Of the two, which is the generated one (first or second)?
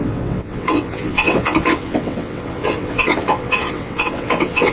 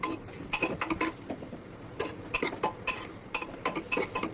first